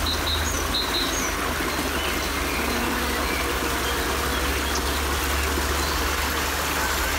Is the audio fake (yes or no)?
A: no